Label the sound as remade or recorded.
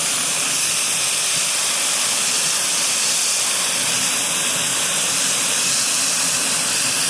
remade